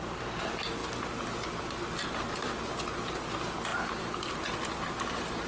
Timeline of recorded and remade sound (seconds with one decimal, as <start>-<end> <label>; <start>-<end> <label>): 0.0-5.5 recorded